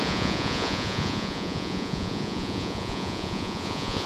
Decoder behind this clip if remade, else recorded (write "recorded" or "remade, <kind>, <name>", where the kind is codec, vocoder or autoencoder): remade, vocoder, Vocos